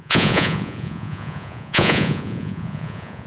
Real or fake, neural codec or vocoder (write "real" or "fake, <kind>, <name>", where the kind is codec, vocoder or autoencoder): fake, vocoder, Vocos